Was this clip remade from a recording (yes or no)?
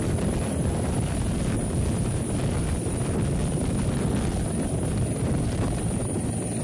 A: no